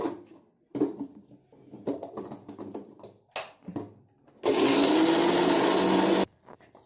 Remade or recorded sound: recorded